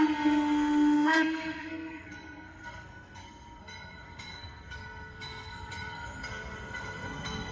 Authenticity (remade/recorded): remade